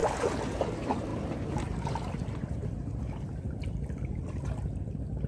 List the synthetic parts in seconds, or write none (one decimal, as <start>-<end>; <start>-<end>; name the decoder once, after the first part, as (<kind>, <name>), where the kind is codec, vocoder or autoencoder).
none